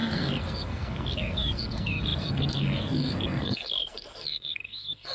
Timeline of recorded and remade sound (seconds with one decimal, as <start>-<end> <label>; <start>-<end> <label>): 0.0-5.1 remade